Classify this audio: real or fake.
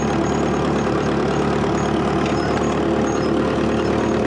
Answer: real